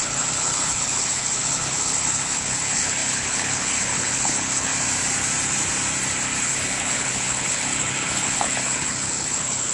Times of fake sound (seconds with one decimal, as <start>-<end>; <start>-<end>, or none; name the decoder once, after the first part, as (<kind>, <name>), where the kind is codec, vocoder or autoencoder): 0.0-4.7 (codec, HILCodec); 6.4-9.7

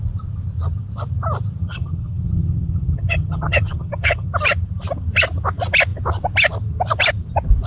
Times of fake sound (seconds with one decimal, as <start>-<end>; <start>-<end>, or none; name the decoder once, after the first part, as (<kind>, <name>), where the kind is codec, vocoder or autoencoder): 1.6-4.3 (vocoder, HiFi-GAN)

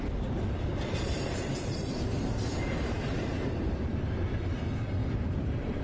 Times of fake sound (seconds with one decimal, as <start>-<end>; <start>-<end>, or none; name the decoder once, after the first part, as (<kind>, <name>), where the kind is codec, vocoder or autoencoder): 0.7-3.8 (vocoder, BigVGAN v2); 5.0-5.8

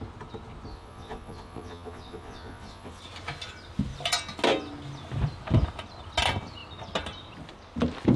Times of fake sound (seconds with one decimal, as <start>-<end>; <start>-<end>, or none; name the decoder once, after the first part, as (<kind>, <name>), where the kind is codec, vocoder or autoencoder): 0.7-3.0 (vocoder, Vocos)

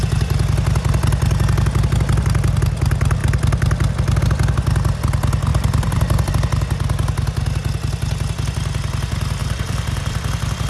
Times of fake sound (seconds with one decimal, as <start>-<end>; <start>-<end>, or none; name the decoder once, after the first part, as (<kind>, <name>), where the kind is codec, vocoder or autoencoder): 5.5-6.3 (vocoder, BigVGAN v2); 9.4-10.7

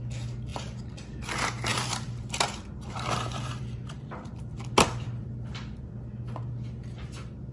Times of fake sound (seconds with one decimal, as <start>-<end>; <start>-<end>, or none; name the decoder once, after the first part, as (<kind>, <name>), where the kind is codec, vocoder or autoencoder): 0.5-1.2 (vocoder, BigVGAN v2); 1.7-6.1

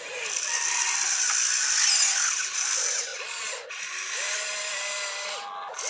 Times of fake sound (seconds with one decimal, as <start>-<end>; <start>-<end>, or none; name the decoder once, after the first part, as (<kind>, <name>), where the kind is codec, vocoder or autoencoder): none

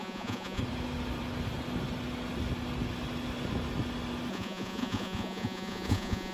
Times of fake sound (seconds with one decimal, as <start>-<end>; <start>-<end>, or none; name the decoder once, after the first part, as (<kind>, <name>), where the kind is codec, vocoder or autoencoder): 0.0-0.6 (vocoder, Vocos); 4.3-6.3